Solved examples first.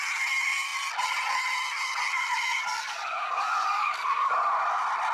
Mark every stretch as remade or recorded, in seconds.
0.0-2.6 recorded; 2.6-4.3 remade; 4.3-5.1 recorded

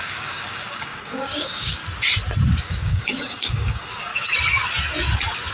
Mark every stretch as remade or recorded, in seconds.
0.0-1.8 remade; 1.8-2.6 recorded; 2.6-4.1 remade; 4.1-5.5 recorded